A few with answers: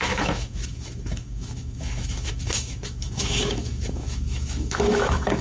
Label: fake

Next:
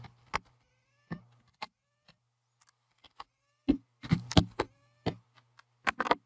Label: real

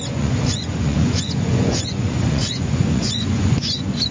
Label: fake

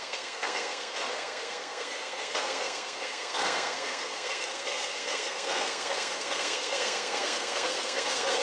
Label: fake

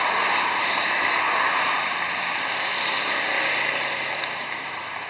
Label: real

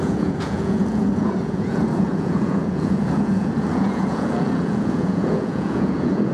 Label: fake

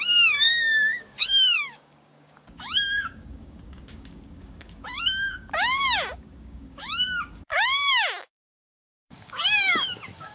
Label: fake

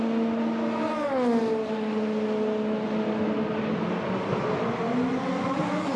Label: real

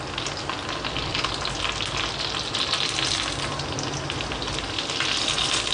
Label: real